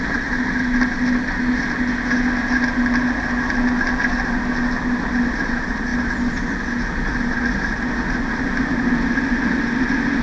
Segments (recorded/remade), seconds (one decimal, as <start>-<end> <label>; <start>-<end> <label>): 0.0-10.2 recorded